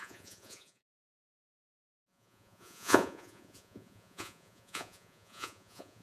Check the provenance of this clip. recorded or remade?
remade